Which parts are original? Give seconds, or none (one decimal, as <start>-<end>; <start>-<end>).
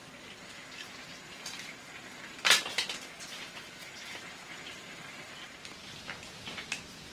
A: 0.0-7.1